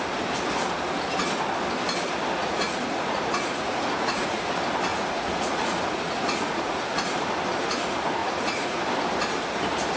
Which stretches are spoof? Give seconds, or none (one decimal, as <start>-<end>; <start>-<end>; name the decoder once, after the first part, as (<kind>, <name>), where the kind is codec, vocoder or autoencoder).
2.4-4.4 (vocoder, Vocos); 4.9-6.8; 8.2-8.8